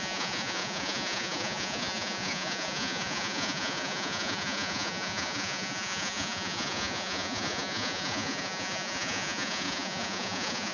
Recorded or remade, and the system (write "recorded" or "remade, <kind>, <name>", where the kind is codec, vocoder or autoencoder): remade, vocoder, Vocos